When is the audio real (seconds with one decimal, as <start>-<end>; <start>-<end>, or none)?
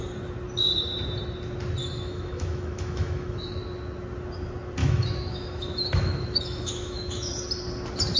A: 0.0-1.8; 3.6-4.8; 7.3-8.2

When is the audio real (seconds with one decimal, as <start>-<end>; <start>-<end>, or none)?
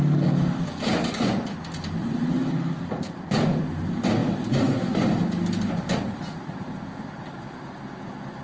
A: 0.0-2.0; 3.2-4.2; 5.1-8.4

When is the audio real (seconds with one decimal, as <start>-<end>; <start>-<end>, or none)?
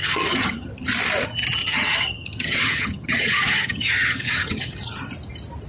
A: 0.7-1.6; 5.0-5.7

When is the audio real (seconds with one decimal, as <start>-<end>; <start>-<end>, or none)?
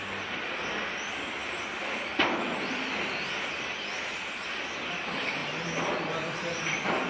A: 0.0-7.1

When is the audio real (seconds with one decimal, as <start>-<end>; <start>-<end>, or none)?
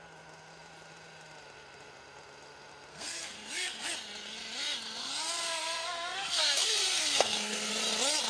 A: 0.0-2.9; 3.9-5.0; 7.7-8.3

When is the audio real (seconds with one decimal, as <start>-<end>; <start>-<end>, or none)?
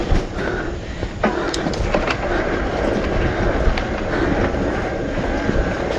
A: 0.0-6.0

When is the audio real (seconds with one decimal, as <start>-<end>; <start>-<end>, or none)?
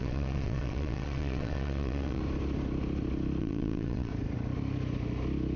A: 2.2-3.4; 4.1-5.6